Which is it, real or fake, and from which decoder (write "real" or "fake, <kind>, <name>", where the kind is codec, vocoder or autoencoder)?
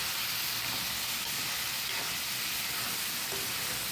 real